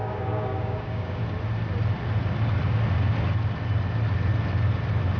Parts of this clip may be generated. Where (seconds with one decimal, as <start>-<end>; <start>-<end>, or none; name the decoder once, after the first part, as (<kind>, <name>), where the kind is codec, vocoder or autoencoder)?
0.0-1.2 (codec, DAC)